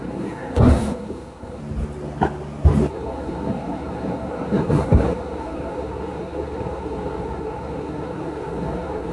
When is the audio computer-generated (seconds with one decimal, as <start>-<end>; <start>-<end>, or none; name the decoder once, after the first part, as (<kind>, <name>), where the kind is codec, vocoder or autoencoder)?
0.0-1.6 (codec, SNAC); 2.9-9.1